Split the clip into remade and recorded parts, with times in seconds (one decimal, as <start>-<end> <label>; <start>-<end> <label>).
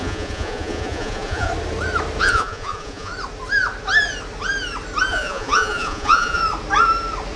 0.0-1.5 remade; 1.5-2.2 recorded; 2.2-3.1 remade; 3.1-5.1 recorded; 5.1-6.4 remade; 6.4-7.4 recorded